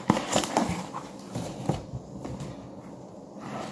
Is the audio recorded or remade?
remade